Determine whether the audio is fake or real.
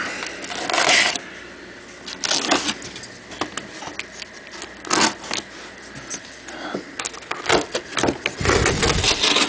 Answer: real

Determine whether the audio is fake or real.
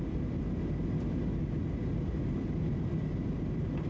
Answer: real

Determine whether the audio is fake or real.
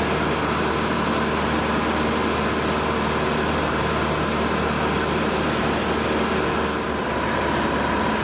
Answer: real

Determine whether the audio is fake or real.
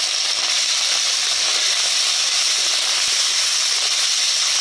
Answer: real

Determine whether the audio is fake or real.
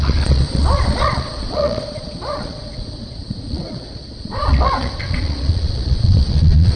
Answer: fake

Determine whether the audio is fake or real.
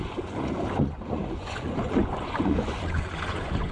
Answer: fake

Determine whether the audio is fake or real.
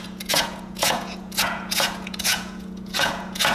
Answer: fake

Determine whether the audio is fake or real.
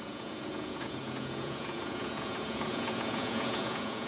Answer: fake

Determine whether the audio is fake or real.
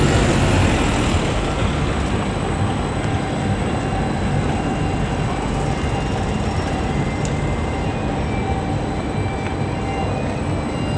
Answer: real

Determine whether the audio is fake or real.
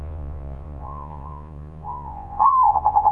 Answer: fake